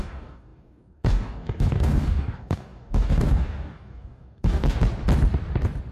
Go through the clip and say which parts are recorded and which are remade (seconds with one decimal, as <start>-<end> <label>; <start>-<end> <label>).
0.0-4.8 remade; 4.8-5.9 recorded